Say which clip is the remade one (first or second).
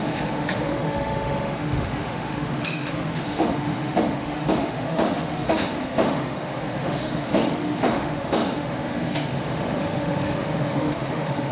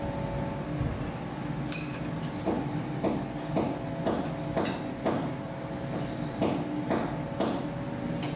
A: first